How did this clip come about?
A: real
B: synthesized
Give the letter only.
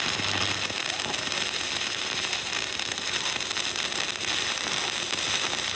A